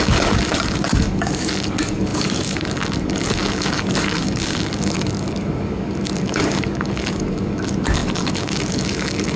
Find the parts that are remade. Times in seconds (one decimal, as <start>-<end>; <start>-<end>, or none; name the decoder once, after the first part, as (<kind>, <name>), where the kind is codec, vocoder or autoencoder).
0.0-9.4 (codec, DAC)